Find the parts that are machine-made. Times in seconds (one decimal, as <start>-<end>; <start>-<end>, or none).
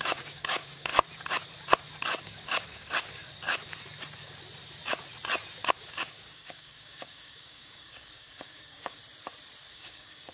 0.0-0.9; 2.2-3.2; 5.7-9.0; 9.7-10.3